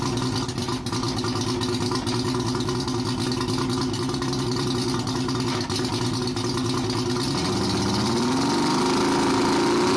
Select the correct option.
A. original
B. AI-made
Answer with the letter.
A